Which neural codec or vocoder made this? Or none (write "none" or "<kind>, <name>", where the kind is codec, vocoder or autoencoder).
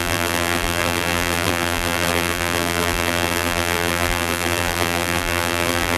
vocoder, BigVGAN v2